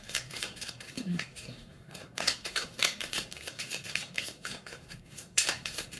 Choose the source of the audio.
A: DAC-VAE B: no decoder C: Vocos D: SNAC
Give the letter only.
D